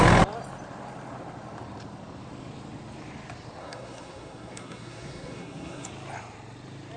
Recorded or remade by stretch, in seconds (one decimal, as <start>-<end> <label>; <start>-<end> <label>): 0.0-3.6 recorded; 3.6-5.9 remade; 5.9-7.0 recorded